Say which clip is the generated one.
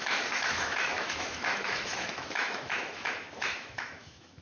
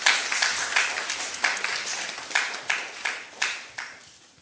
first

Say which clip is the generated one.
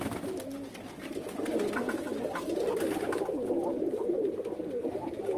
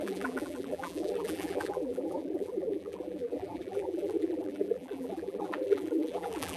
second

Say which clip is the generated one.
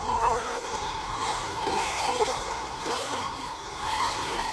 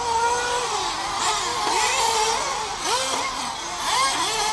first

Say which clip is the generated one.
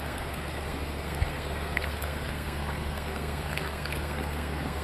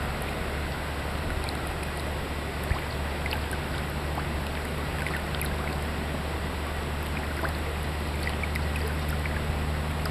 first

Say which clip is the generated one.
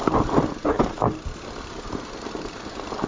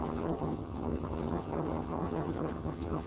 second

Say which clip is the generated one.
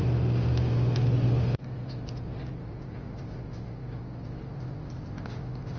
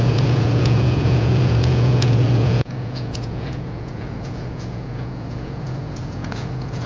second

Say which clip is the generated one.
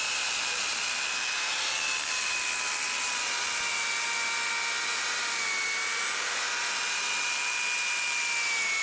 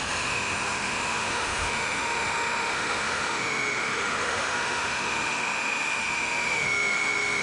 second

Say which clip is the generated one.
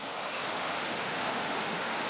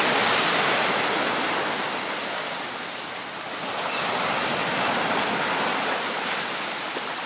first